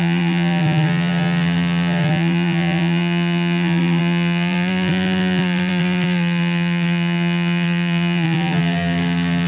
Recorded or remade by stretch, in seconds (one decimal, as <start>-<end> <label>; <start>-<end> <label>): 0.0-9.5 remade